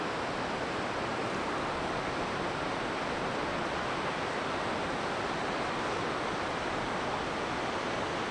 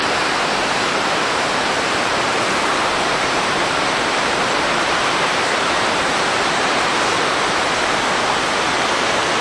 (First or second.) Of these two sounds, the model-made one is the second